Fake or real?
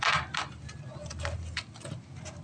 real